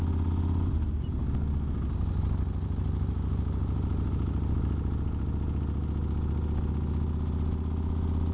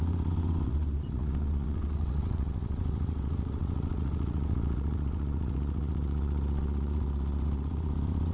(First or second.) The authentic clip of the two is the first